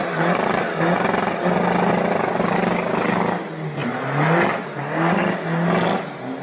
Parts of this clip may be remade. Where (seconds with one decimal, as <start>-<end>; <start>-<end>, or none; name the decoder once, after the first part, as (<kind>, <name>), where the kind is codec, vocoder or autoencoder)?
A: none